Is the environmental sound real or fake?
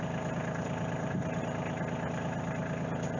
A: real